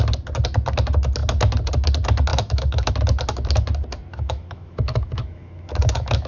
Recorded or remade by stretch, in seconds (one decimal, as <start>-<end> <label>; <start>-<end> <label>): 0.0-2.3 recorded; 2.3-2.9 remade; 2.9-4.1 recorded; 4.1-6.3 remade